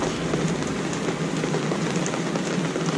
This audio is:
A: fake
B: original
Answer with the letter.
B